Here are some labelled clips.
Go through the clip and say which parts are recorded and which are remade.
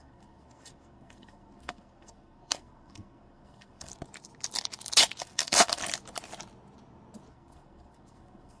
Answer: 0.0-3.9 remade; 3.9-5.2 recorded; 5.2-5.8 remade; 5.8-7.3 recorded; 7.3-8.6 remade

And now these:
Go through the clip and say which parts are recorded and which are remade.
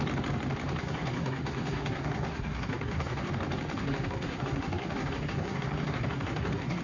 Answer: 0.0-0.8 recorded; 0.8-3.3 remade; 3.3-3.7 recorded; 3.7-6.8 remade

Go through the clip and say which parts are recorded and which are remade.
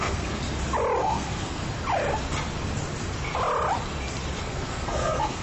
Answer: 0.0-0.4 remade; 0.4-1.0 recorded; 1.0-1.6 remade; 1.6-4.4 recorded; 4.4-5.4 remade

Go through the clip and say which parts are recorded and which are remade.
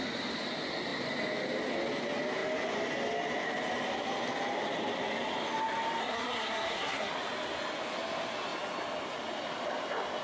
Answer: 0.0-6.0 recorded; 6.0-7.1 remade; 7.1-10.2 recorded